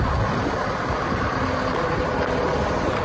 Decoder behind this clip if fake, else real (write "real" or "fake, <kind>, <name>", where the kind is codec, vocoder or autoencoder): fake, vocoder, BigVGAN v2